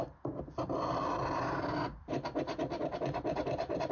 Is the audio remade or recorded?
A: recorded